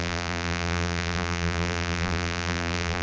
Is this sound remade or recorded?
remade